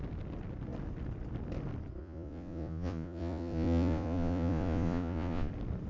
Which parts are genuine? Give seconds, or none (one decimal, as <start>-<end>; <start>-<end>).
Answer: 0.0-2.0; 5.5-5.9